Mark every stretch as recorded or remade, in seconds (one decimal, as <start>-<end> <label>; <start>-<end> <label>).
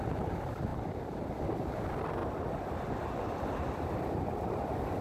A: 0.0-0.7 remade; 0.7-1.2 recorded; 1.2-2.2 remade; 2.2-4.4 recorded; 4.4-5.0 remade